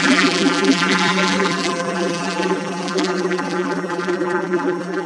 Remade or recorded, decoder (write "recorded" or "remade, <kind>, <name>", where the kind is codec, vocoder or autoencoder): remade, vocoder, BigVGAN v2